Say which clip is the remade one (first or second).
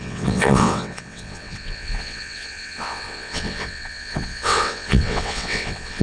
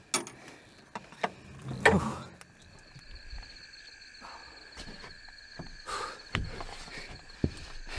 first